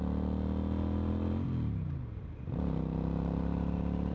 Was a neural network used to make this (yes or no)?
no